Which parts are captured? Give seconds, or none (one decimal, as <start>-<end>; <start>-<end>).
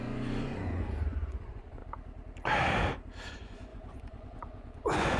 1.8-3.3